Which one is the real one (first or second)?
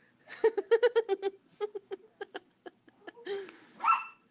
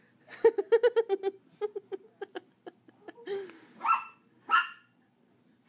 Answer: second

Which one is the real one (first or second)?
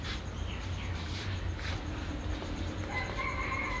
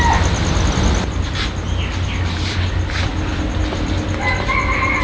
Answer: second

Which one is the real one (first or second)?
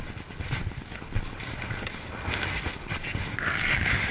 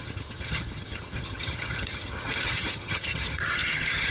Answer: first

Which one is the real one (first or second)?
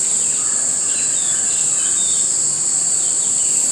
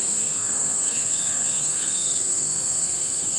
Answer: first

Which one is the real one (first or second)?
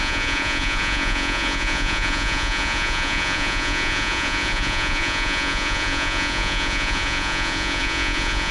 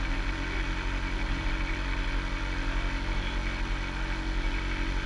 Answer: second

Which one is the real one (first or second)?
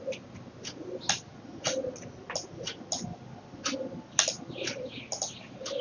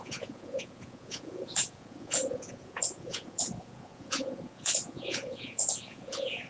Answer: first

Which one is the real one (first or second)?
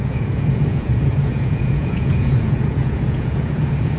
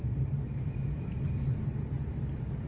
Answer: second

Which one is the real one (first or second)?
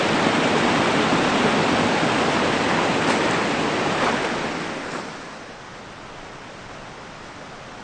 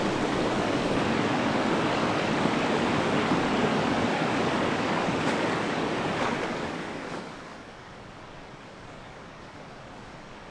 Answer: first